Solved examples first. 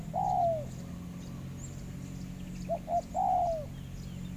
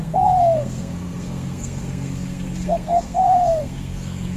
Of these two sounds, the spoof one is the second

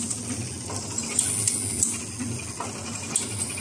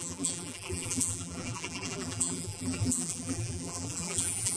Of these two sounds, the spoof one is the second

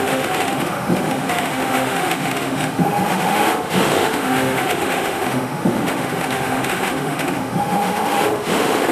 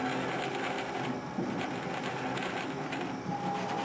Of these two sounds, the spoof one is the first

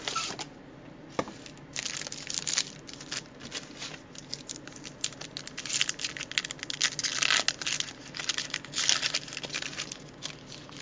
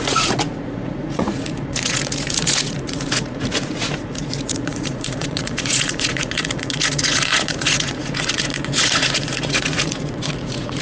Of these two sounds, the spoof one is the second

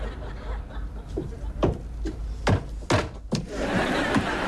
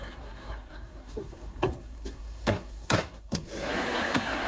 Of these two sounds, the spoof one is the second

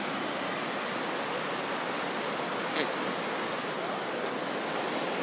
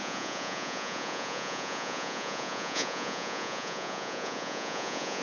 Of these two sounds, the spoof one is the second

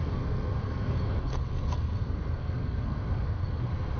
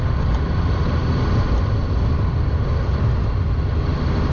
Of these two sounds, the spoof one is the first